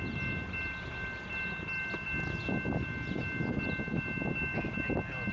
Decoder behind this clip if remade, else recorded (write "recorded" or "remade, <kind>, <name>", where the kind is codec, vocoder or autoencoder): recorded